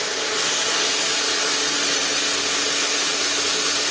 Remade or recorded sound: recorded